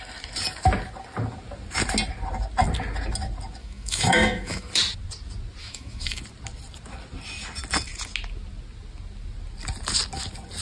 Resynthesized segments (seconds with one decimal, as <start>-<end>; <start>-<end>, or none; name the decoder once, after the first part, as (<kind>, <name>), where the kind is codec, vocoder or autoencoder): 3.6-4.7 (autoencoder, DAC-VAE); 5.6-6.2